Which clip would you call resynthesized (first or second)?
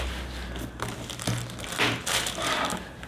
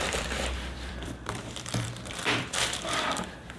second